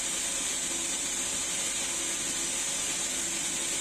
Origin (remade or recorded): recorded